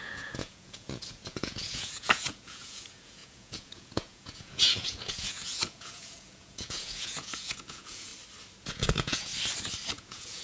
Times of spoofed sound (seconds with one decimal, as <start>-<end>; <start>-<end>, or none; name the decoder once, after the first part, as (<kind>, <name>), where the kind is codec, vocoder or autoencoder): 0.0-8.1 (vocoder, Vocos); 8.6-9.3; 9.9-10.4